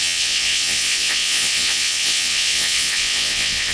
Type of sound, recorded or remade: remade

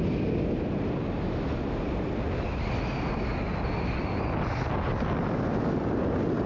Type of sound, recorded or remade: recorded